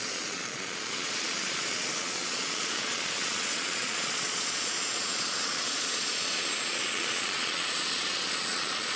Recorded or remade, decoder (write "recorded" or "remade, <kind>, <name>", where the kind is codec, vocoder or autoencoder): remade, vocoder, Vocos